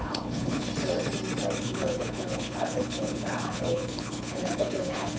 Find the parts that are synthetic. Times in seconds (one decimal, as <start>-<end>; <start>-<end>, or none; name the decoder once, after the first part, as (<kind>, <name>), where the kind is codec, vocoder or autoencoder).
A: 0.0-0.7 (codec, HILCodec); 1.6-5.2